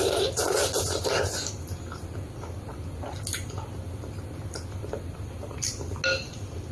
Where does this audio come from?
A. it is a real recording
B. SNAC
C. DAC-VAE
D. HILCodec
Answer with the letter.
A